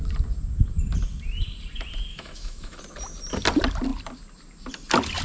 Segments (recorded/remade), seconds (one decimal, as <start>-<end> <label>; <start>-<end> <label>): 0.0-2.1 recorded; 2.1-2.8 remade; 2.8-5.2 recorded